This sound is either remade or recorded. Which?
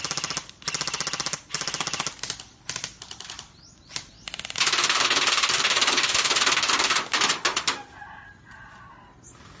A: recorded